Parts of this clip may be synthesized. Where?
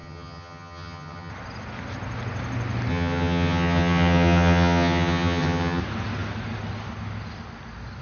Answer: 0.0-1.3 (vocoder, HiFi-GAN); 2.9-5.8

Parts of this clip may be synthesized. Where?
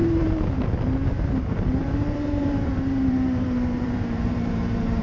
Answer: 0.0-0.6 (vocoder, BigVGAN v2); 1.8-5.0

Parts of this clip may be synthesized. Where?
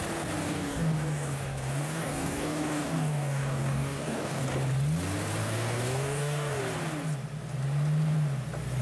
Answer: 0.4-4.4 (codec, DAC); 5.4-6.6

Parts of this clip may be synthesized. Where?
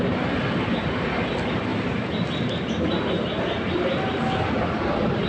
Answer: 0.0-1.7 (vocoder, BigVGAN v2); 2.7-5.3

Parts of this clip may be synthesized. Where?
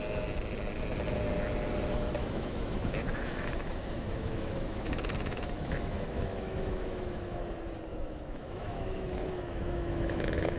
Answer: 2.2-7.4 (autoencoder, DAC-VAE); 7.9-10.6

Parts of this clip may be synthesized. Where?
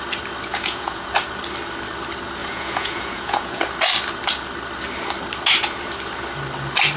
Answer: 0.5-1.1 (vocoder, Vocos); 2.4-3.6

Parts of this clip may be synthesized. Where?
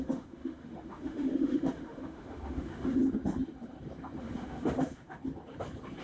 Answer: 0.0-3.0 (autoencoder, DAC-VAE); 4.2-5.2